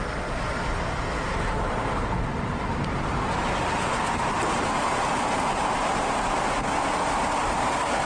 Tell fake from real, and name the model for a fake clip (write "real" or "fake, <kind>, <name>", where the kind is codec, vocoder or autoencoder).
real